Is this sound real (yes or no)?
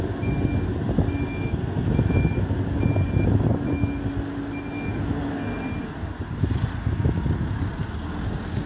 yes